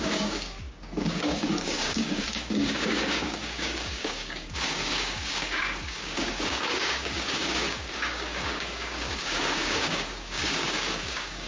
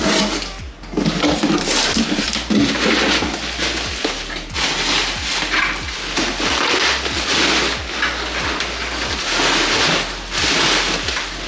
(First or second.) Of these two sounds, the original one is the second